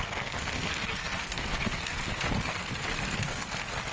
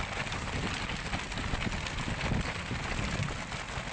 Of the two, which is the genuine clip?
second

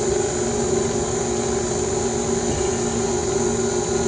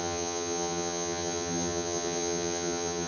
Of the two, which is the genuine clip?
first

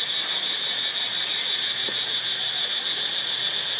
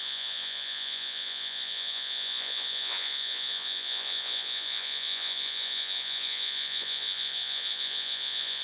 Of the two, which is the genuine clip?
first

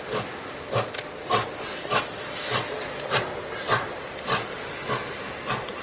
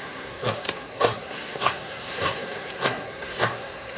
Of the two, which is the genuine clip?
first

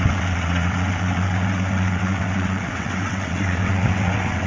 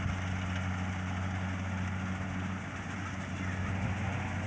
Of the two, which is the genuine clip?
second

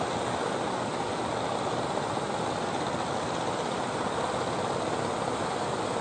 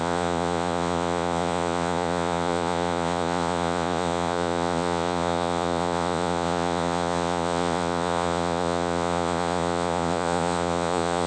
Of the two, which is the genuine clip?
first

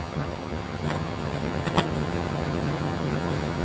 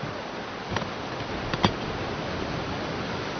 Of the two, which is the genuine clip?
second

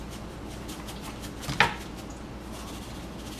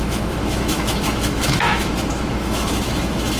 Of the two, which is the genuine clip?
first